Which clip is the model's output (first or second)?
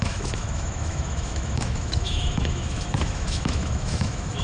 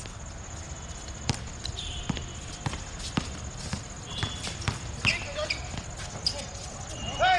first